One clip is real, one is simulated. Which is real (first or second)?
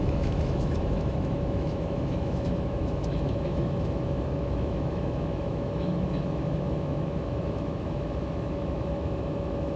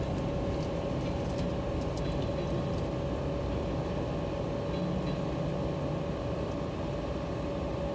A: second